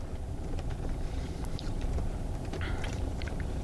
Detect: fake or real fake